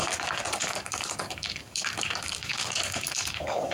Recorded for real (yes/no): no